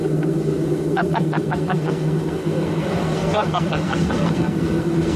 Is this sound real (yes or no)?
no